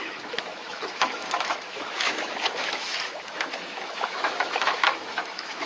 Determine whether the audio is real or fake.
fake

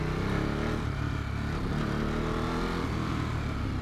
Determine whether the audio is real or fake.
real